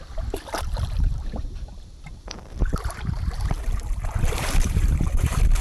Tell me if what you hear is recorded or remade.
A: remade